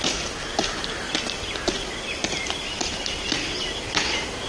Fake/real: real